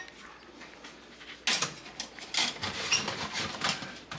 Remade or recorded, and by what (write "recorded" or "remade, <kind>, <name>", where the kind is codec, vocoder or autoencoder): recorded